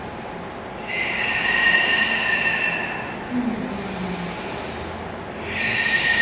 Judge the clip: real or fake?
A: real